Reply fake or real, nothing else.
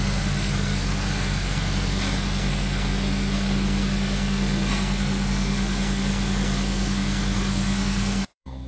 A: fake